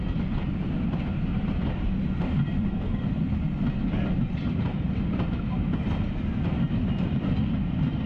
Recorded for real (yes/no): yes